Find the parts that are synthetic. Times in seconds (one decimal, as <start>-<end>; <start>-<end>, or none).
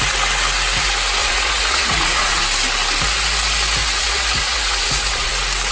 1.2-2.4; 3.8-5.3